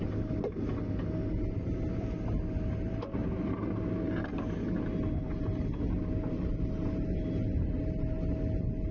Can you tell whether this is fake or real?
real